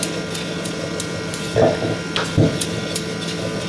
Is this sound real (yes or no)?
yes